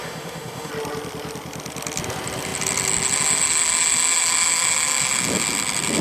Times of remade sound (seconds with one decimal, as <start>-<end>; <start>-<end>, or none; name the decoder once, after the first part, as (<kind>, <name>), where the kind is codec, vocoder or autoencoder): 0.0-0.7 (autoencoder, DAC-VAE)